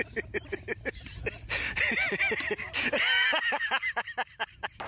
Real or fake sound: real